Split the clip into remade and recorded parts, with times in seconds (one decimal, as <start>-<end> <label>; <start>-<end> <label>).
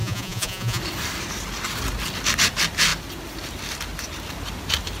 0.0-0.8 remade; 0.8-5.0 recorded